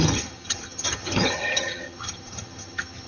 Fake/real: fake